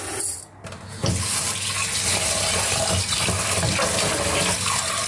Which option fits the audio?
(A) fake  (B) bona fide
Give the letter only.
B